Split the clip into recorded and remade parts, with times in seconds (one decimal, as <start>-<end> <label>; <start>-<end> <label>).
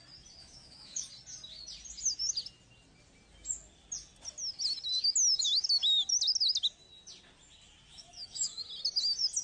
0.0-0.4 recorded; 0.4-1.1 remade; 1.1-7.9 recorded; 7.9-8.6 remade; 8.6-9.4 recorded